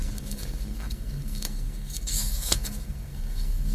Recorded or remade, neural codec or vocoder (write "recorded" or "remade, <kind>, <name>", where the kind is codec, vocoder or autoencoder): remade, codec, SNAC